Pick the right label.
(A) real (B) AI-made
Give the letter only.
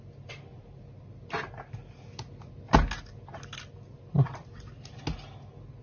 A